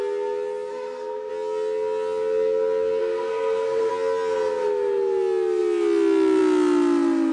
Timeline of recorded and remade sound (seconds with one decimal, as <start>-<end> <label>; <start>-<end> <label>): 0.0-0.7 recorded; 0.7-1.3 remade; 1.3-3.0 recorded; 3.0-3.9 remade; 3.9-7.3 recorded